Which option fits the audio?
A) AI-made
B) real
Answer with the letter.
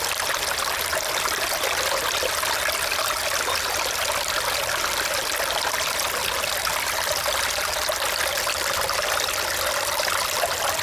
B